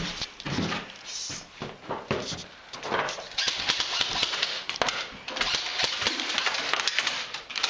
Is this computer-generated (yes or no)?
no